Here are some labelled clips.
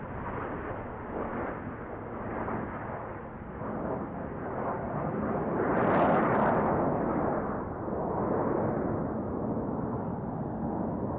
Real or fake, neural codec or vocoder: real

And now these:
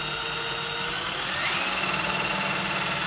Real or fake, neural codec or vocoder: real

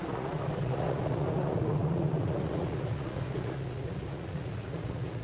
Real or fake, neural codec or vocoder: fake, vocoder, Vocos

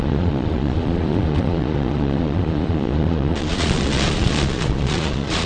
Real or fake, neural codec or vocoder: fake, vocoder, Vocos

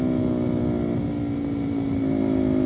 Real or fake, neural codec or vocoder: real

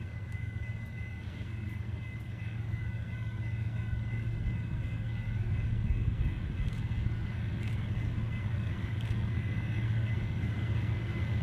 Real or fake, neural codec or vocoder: fake, codec, SNAC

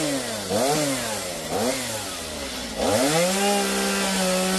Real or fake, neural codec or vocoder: real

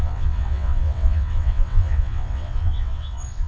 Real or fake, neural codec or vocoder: fake, vocoder, WaveNeXt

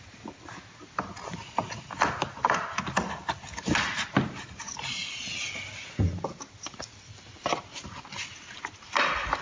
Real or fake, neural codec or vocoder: real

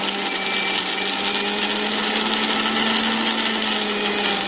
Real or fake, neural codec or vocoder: real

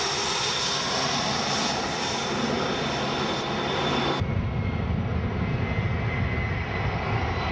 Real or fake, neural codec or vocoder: real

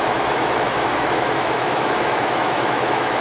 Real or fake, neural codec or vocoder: fake, autoencoder, DAC-VAE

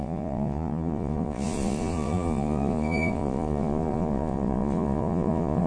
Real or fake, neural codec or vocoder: fake, vocoder, Vocos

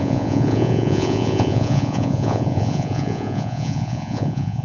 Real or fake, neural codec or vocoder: fake, vocoder, Vocos